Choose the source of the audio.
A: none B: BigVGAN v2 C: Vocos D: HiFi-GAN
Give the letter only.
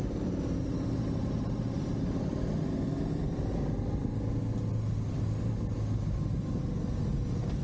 A